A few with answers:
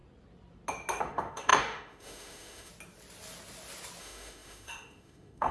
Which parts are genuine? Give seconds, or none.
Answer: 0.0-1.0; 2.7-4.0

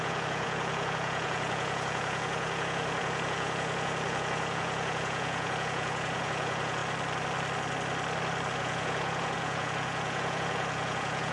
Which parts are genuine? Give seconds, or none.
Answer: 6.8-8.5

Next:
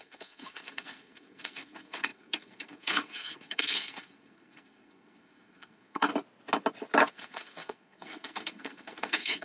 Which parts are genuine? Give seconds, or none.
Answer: 6.1-7.1

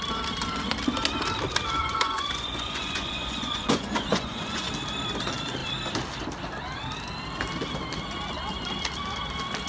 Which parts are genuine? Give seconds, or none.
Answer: 0.0-1.8; 4.7-9.7

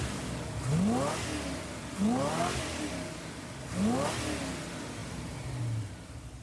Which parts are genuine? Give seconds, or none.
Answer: 0.0-6.4

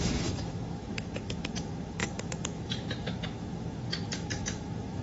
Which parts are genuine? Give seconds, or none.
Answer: none

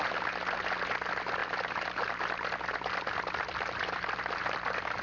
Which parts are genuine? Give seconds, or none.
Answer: 0.0-5.0